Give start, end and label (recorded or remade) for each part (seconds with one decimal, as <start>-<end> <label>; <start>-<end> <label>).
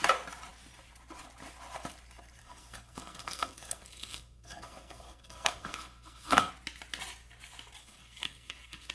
0.0-2.4 recorded; 2.4-6.5 remade; 6.5-7.8 recorded; 7.8-8.9 remade